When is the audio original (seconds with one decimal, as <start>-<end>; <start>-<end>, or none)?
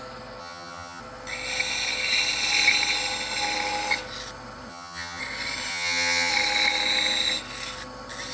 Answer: 0.0-0.4; 1.0-4.7; 5.2-5.7; 6.3-8.3